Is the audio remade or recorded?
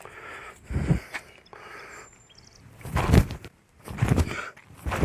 recorded